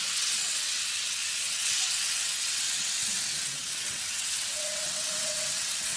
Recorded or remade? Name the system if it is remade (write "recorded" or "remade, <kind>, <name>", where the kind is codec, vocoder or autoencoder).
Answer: remade, vocoder, WaveNeXt